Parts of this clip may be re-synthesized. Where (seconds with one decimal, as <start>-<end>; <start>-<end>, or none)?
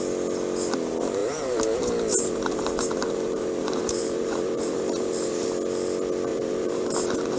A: 1.2-5.5; 6.3-7.4